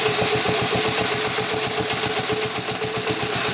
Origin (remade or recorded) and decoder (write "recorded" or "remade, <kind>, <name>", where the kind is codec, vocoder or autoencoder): recorded